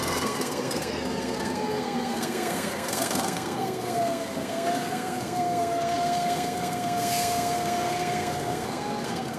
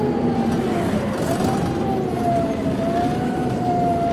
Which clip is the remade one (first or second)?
first